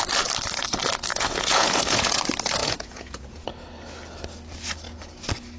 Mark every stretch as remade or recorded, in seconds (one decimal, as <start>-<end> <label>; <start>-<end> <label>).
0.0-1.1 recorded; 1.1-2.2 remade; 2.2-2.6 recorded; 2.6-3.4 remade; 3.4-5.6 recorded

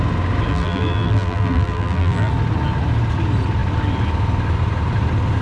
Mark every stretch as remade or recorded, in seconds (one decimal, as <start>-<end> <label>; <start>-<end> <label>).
0.0-0.5 recorded; 0.5-2.3 remade; 2.3-5.4 recorded

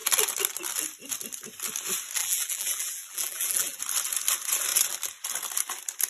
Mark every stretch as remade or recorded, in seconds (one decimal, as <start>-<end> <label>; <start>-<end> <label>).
0.0-2.2 recorded; 2.2-3.8 remade; 3.8-6.1 recorded